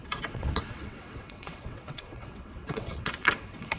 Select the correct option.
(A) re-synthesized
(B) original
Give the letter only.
A